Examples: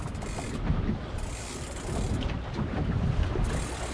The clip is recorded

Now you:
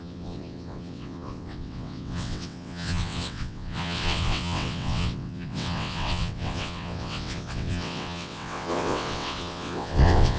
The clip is remade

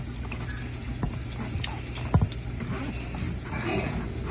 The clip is recorded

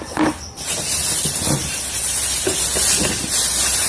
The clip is recorded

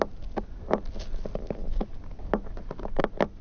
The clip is recorded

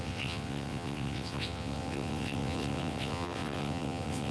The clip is remade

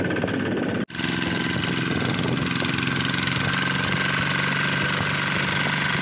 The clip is recorded